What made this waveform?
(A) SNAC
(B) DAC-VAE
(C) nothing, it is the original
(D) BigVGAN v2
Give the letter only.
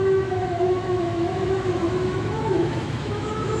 B